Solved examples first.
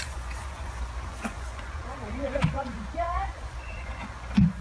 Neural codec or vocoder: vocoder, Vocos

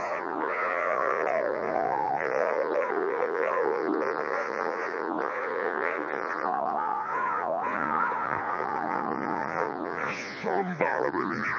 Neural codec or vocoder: vocoder, Vocos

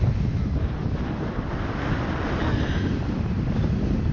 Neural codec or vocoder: none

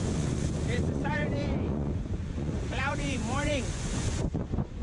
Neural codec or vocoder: vocoder, Vocos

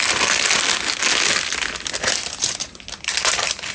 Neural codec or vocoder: none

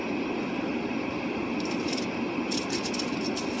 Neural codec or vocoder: none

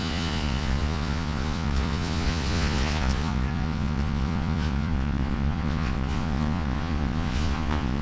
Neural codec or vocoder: vocoder, Vocos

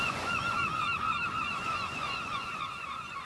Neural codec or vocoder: vocoder, Vocos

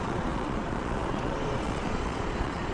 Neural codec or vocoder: vocoder, Vocos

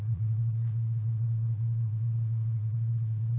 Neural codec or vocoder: vocoder, Vocos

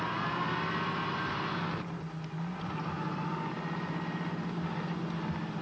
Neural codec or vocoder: none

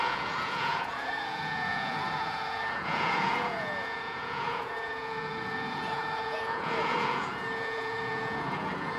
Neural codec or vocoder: vocoder, Vocos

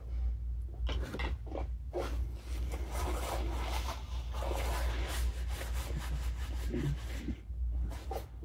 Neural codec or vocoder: none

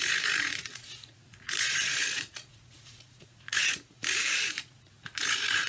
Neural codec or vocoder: vocoder, Vocos